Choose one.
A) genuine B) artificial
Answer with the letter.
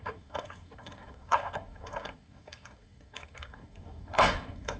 B